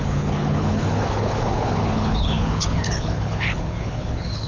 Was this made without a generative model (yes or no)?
no